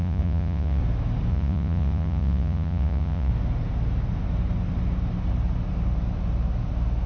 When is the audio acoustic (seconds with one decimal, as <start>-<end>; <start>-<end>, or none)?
0.8-1.3; 3.3-7.1